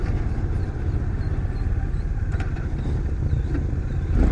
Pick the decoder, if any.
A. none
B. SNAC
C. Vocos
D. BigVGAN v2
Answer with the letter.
A